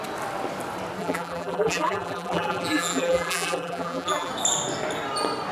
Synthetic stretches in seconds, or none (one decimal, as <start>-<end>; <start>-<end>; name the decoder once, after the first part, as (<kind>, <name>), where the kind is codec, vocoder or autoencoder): 1.0-4.3 (vocoder, BigVGAN v2)